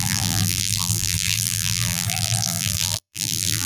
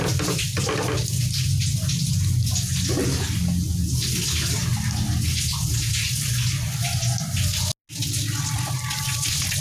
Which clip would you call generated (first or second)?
first